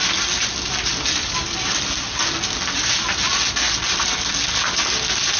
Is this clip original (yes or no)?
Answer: yes